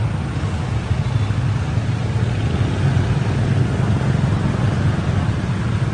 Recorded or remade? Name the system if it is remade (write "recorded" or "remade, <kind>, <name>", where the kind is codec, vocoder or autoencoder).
recorded